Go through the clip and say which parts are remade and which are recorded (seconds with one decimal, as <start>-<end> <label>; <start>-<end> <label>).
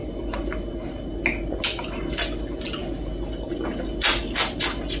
0.0-5.0 recorded